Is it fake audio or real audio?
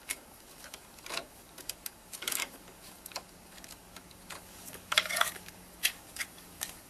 fake